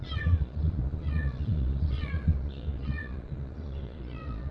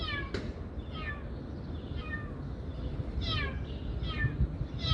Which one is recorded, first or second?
second